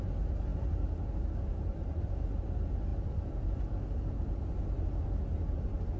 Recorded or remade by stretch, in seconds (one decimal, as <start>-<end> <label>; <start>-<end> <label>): 0.0-2.9 recorded; 2.9-3.7 remade; 3.7-6.0 recorded